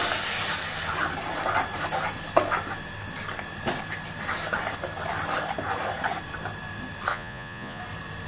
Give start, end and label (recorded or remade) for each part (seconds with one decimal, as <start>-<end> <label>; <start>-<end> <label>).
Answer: 0.0-7.1 recorded; 7.1-7.8 remade; 7.8-8.3 recorded